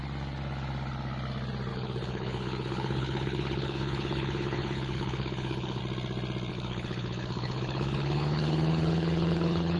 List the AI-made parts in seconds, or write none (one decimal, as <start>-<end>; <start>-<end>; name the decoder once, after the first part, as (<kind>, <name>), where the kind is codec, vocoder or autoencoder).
1.7-5.8 (codec, HILCodec); 6.5-9.8